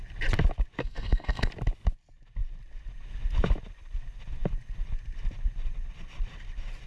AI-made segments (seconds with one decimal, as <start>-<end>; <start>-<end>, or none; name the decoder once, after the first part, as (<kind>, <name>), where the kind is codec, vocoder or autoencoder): 0.8-1.5 (codec, SNAC)